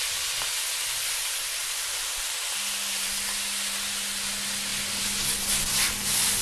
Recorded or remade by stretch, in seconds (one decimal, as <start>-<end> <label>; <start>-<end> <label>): 0.0-6.4 recorded